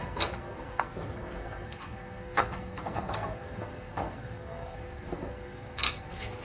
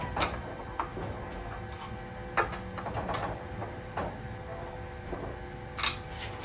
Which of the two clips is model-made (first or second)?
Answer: first